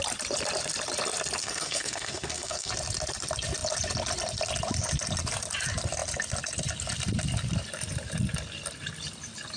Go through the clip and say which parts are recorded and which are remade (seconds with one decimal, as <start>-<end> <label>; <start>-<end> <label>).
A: 0.0-1.4 recorded; 1.4-2.7 remade; 2.7-9.6 recorded